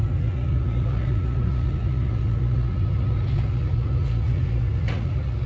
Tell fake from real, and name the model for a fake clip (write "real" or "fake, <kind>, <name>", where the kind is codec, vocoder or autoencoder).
fake, vocoder, Vocos